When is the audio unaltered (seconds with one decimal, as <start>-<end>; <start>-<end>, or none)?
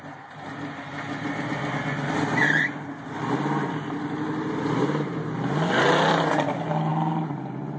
0.0-7.8